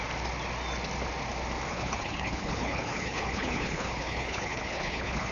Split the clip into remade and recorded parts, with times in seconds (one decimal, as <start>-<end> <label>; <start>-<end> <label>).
0.0-1.7 recorded; 1.7-5.3 remade